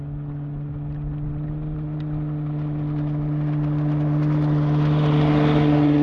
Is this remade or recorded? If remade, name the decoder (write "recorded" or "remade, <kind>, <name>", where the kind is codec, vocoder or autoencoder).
recorded